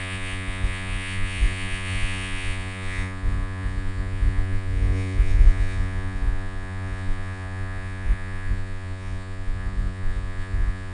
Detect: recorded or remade remade